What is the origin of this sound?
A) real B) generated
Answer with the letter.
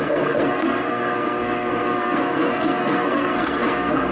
B